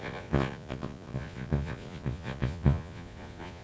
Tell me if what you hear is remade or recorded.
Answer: remade